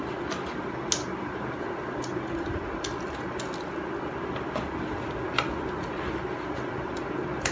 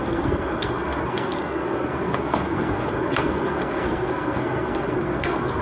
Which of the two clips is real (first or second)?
first